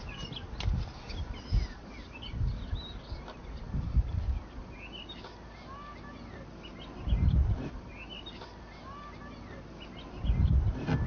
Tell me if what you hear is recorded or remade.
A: recorded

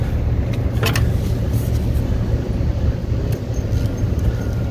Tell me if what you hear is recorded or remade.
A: recorded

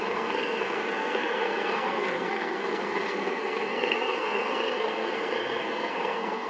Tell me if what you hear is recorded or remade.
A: remade